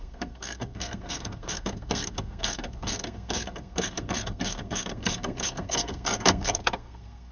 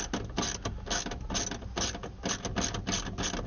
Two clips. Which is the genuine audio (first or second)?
second